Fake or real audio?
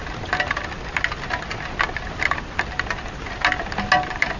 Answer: real